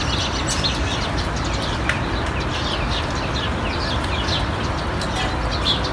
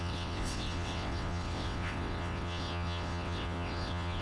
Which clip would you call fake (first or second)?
second